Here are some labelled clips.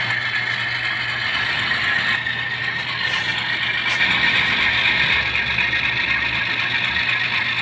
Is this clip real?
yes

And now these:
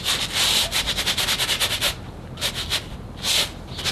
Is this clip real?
yes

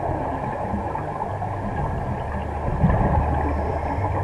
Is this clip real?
no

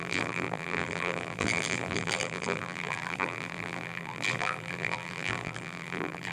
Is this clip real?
no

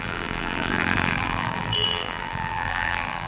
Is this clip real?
no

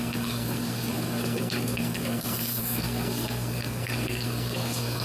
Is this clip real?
no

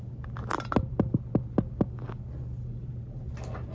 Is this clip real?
yes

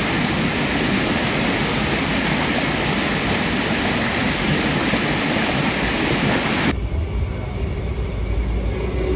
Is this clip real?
yes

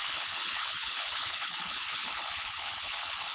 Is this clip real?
no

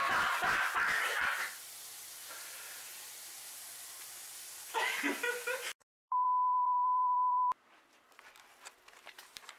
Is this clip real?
no